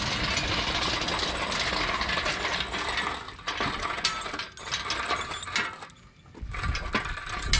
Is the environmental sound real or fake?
real